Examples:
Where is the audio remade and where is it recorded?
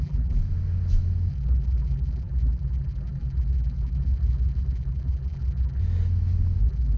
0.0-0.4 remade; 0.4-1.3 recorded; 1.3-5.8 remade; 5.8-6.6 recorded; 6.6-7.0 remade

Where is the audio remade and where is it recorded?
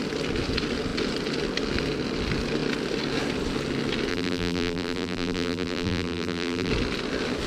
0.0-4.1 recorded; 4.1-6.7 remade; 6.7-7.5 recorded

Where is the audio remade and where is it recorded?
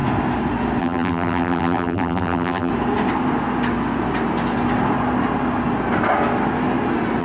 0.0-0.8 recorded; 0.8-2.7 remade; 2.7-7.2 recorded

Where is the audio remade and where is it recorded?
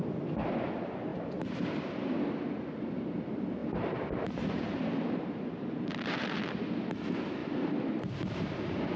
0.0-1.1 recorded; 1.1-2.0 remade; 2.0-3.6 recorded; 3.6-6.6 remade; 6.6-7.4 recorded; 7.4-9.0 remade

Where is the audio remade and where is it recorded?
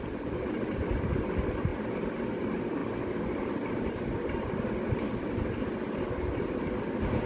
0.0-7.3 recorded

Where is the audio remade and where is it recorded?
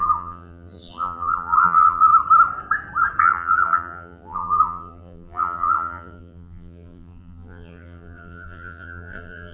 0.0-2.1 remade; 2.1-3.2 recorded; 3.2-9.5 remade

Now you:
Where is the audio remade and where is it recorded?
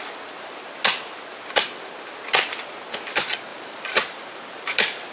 0.0-3.5 recorded; 3.5-5.1 remade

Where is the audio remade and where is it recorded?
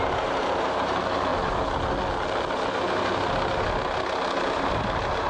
0.0-1.3 remade; 1.3-4.4 recorded; 4.4-5.3 remade